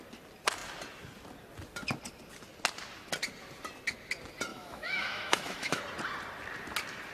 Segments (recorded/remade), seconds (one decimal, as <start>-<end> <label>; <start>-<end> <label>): 0.0-4.5 recorded; 4.5-5.8 remade; 5.8-7.1 recorded